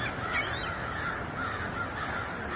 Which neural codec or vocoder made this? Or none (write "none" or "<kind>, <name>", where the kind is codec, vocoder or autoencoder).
none